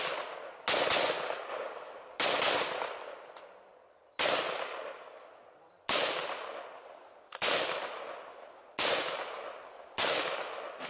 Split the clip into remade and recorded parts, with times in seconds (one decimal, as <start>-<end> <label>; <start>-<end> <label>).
0.0-10.9 recorded